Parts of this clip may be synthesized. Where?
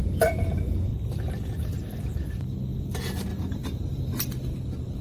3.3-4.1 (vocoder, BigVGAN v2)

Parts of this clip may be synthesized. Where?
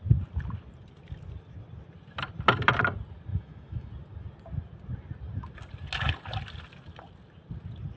3.3-3.9 (autoencoder, DAC-VAE)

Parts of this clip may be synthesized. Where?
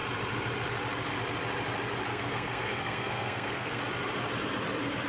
2.1-3.8 (codec, SNAC)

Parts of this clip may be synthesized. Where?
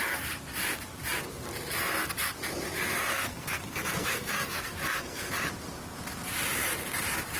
3.1-5.3 (codec, SNAC)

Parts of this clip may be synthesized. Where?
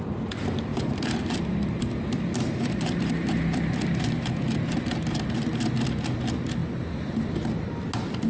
0.7-4.9 (vocoder, BigVGAN v2)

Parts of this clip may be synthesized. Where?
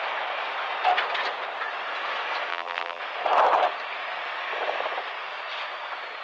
2.5-3.0 (vocoder, BigVGAN v2)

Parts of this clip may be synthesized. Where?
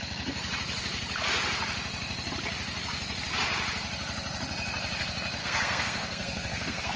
5.4-7.0 (codec, SNAC)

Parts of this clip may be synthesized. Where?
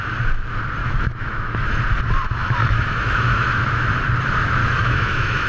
0.8-1.8 (autoencoder, DAC-VAE); 2.6-3.9; 4.6-5.5